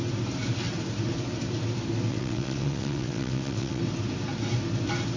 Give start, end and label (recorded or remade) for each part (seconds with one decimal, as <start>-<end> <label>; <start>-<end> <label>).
0.0-2.1 recorded; 2.1-3.8 remade; 3.8-5.2 recorded